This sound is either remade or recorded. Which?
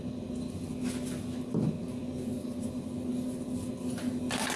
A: recorded